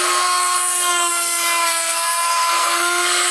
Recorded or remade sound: remade